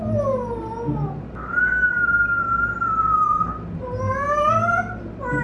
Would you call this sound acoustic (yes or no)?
yes